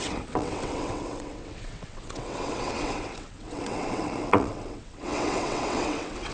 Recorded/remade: remade